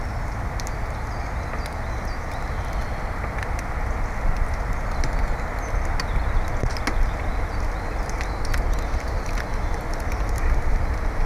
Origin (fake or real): real